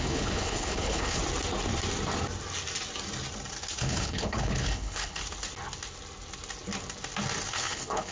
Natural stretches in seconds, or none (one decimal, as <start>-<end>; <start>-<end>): 1.2-3.8; 5.2-7.5